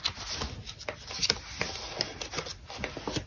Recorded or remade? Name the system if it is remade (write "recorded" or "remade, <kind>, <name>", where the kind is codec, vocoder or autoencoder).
recorded